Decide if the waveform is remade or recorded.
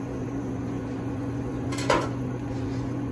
remade